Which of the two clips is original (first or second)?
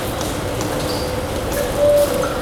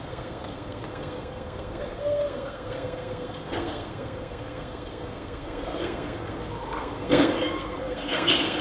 first